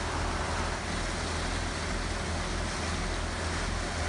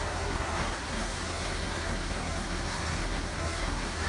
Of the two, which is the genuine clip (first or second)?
first